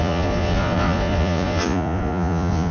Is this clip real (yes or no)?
no